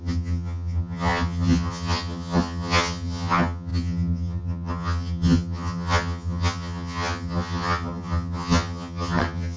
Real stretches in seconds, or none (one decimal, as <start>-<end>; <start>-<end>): none